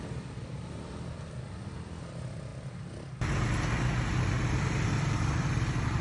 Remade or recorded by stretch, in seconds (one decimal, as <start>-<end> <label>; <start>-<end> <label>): 0.0-2.5 remade; 2.5-4.4 recorded; 4.4-6.0 remade